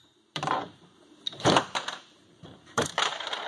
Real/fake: fake